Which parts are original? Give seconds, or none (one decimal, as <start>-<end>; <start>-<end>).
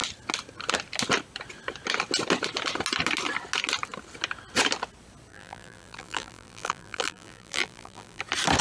0.0-5.3; 8.2-8.6